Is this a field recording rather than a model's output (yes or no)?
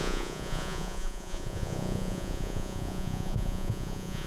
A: no